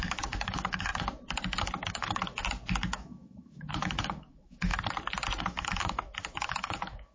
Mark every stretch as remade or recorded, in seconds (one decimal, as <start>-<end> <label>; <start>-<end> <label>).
0.0-0.9 remade; 0.9-1.9 recorded; 1.9-2.4 remade; 2.4-2.9 recorded; 2.9-4.7 remade; 4.7-5.4 recorded; 5.4-7.1 remade